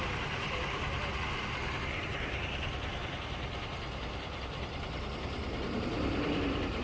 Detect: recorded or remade recorded